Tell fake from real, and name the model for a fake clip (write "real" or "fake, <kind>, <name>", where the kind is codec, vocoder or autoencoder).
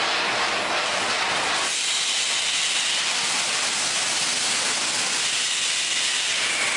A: real